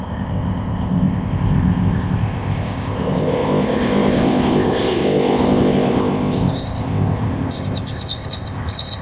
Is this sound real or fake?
fake